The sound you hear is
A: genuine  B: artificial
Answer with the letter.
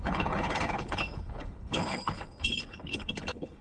B